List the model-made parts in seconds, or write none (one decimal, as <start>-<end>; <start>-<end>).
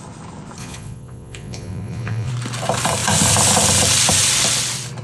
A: 0.6-2.3